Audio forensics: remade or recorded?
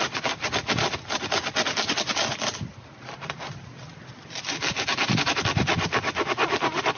recorded